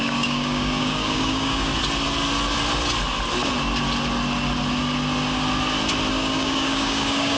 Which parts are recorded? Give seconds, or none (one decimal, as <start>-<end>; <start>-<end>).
1.7-6.1